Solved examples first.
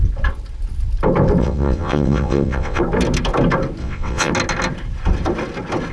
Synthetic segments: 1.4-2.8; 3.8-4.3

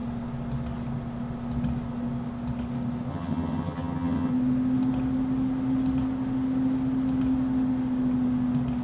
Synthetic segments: 3.1-4.3